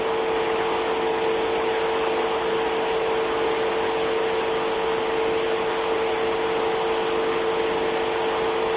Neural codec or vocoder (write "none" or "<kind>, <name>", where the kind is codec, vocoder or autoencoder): none